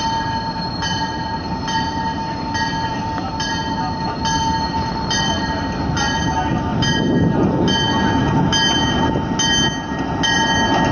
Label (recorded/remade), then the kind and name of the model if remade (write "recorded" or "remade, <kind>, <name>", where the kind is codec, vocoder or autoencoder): recorded